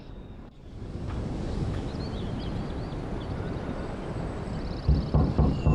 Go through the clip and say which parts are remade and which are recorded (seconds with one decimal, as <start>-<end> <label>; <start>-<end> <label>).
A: 0.0-1.9 remade; 1.9-5.3 recorded; 5.3-5.7 remade